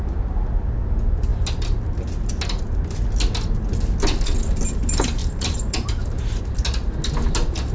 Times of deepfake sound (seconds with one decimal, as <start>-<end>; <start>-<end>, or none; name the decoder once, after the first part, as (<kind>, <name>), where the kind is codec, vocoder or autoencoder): 5.2-6.4 (vocoder, BigVGAN v2)